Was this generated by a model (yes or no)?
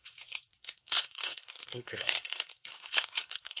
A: yes